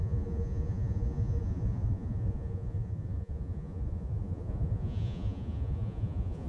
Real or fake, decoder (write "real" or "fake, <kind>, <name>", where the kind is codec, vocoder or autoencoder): fake, vocoder, Vocos